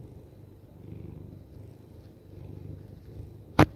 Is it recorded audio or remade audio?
remade